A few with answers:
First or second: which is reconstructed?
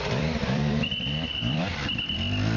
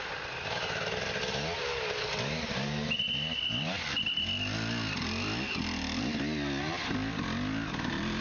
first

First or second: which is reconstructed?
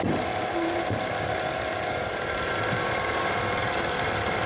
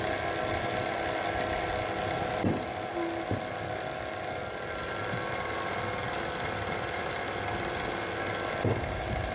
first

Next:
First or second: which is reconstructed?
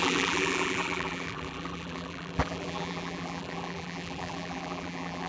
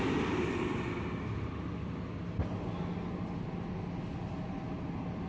first